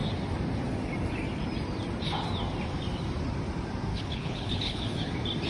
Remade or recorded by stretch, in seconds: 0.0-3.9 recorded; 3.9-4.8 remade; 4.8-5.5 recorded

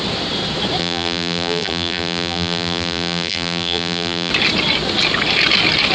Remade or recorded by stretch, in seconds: 0.0-0.8 recorded; 0.8-4.3 remade; 4.3-5.9 recorded

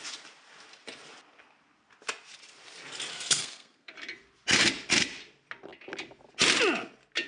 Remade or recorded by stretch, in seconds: 0.0-3.1 recorded; 3.1-3.9 remade; 3.9-7.3 recorded

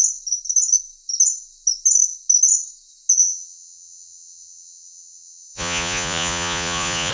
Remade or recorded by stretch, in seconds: 0.0-3.2 recorded; 3.2-7.1 remade

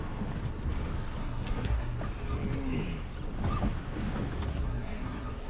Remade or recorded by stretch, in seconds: 0.0-1.2 recorded; 1.2-2.0 remade; 2.0-4.5 recorded; 4.5-5.5 remade

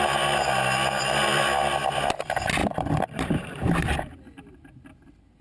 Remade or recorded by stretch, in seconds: 0.0-1.3 recorded; 1.3-1.9 remade; 1.9-2.6 recorded; 2.6-4.5 remade; 4.5-5.4 recorded

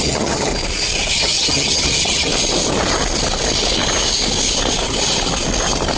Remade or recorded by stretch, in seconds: 0.0-0.5 remade; 0.5-1.1 recorded; 1.1-2.3 remade; 2.3-6.0 recorded